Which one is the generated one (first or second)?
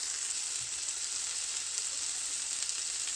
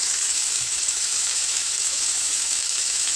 second